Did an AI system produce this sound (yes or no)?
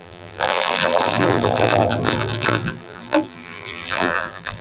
yes